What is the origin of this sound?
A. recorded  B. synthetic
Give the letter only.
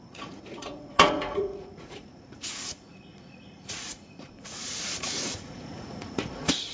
B